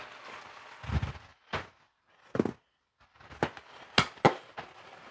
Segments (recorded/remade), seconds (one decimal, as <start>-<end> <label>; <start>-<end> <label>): 0.0-5.1 recorded